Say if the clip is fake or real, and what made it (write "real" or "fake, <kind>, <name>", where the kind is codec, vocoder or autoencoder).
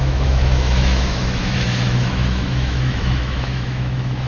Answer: fake, autoencoder, DAC-VAE